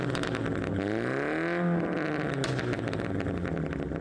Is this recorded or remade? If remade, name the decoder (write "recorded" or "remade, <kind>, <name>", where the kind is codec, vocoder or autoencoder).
recorded